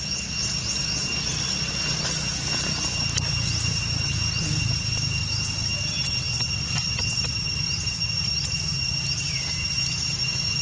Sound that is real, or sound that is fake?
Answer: real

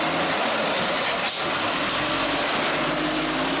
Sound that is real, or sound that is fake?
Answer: real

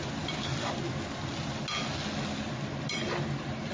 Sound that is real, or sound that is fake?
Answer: real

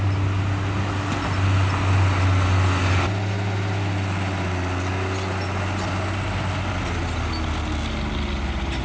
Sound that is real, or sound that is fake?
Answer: real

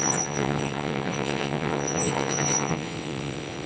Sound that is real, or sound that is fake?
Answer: fake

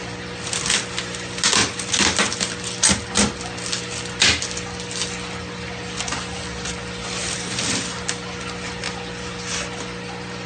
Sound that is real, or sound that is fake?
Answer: real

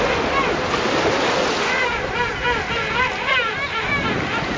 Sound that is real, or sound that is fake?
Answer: real